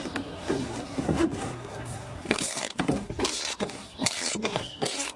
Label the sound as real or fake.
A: fake